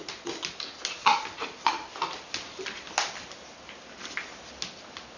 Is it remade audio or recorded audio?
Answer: recorded